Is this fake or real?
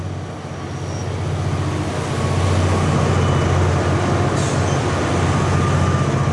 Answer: real